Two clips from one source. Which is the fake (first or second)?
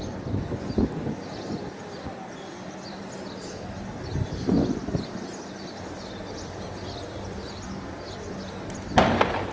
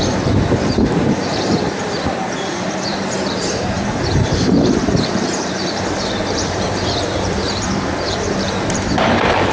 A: second